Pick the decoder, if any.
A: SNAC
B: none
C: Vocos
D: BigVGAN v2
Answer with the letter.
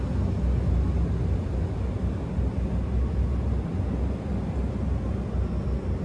B